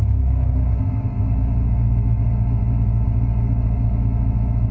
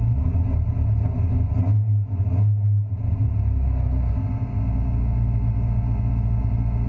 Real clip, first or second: second